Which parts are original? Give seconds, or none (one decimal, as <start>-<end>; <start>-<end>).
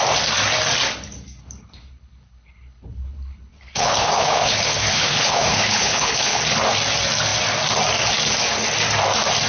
0.0-1.4; 6.4-9.5